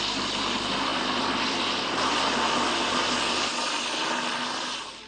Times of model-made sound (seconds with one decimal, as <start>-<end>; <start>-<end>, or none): none